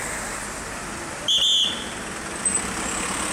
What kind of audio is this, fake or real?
real